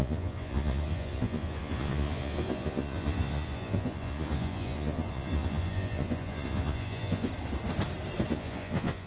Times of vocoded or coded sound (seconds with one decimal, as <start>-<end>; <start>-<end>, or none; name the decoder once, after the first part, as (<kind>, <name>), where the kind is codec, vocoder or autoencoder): 0.0-7.3 (vocoder, Vocos); 8.3-9.1